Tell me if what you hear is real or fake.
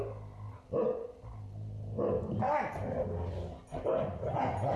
real